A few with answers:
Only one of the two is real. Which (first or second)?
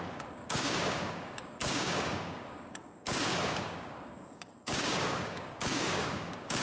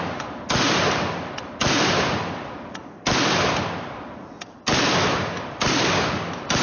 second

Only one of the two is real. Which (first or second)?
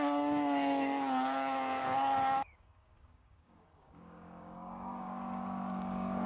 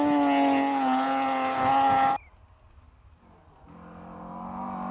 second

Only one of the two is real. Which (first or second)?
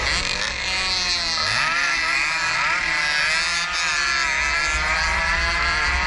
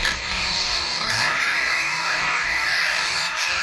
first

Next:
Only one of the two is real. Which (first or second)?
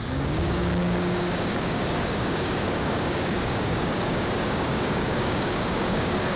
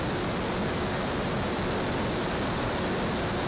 second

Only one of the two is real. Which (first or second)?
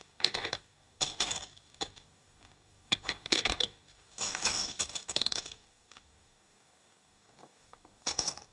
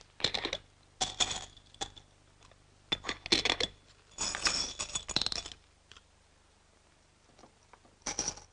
second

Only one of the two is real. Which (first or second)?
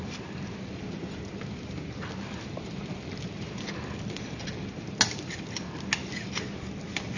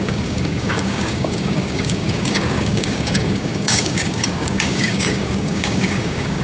first